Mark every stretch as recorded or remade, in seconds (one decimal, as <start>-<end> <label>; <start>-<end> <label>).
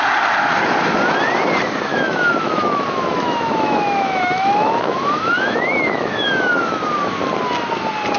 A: 0.0-1.9 recorded; 1.9-6.5 remade; 6.5-8.2 recorded